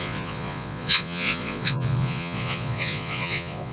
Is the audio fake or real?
fake